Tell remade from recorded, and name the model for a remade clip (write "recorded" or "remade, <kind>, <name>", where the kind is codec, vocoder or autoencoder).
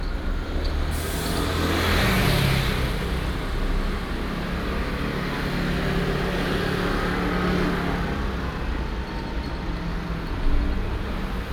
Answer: recorded